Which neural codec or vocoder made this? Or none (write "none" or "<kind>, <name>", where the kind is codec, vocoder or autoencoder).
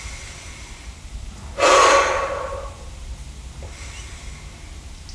none